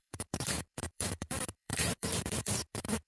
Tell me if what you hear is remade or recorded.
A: remade